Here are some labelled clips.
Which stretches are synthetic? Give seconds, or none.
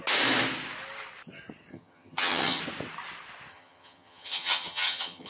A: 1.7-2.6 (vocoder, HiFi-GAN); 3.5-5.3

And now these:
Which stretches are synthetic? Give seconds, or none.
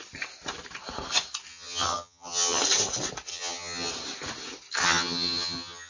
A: 1.5-2.6 (vocoder, HiFi-GAN); 3.3-3.9; 4.8-5.9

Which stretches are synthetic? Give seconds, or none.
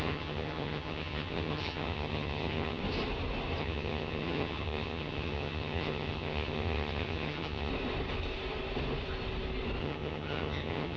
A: 0.0-2.8 (vocoder, HiFi-GAN); 3.6-7.7; 9.8-11.0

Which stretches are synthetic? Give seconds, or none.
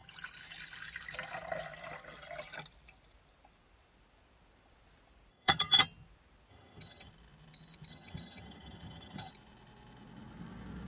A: 5.3-5.8 (vocoder, HiFi-GAN); 6.5-7.1; 7.9-9.3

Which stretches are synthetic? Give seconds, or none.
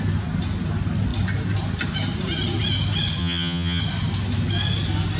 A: 3.2-3.8 (vocoder, HiFi-GAN)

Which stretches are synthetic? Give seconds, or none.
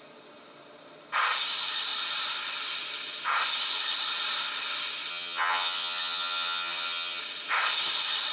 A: 5.1-7.2 (vocoder, HiFi-GAN)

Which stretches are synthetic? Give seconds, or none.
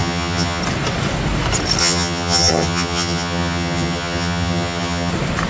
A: 0.0-0.6 (vocoder, HiFi-GAN); 1.8-5.1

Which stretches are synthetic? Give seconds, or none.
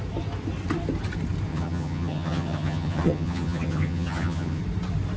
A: 1.5-4.6 (vocoder, HiFi-GAN)